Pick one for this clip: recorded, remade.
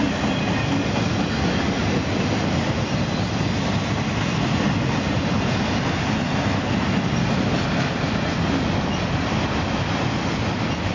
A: recorded